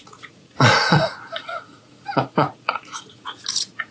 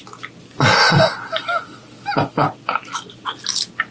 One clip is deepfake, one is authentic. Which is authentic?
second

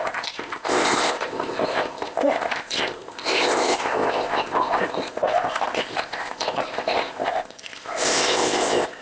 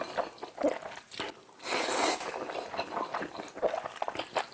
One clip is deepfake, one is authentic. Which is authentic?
second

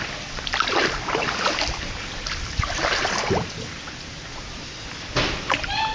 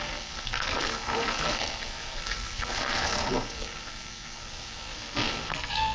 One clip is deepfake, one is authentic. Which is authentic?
first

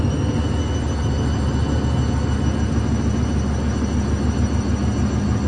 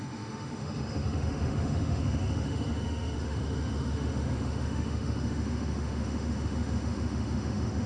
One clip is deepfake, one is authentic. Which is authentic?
first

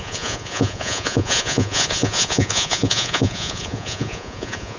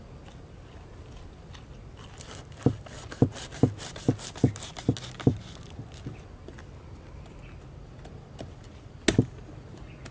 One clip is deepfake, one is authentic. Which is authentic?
second